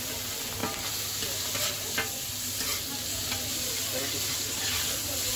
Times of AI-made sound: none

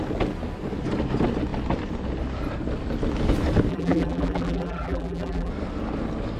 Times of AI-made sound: 3.7-5.5 (vocoder, BigVGAN v2)

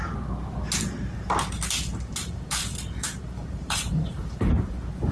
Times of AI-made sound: 1.9-4.5 (vocoder, BigVGAN v2)

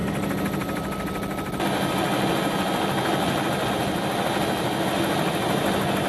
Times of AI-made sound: none

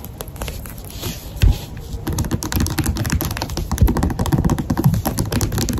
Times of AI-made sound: 3.6-4.7 (vocoder, BigVGAN v2)

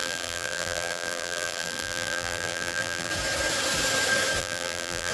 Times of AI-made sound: 0.0-3.1 (vocoder, BigVGAN v2); 4.4-5.1